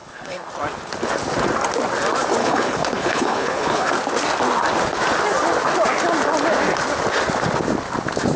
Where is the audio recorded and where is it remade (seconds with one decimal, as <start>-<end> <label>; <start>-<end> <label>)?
0.0-0.5 remade; 0.5-2.4 recorded; 2.4-3.9 remade; 3.9-8.4 recorded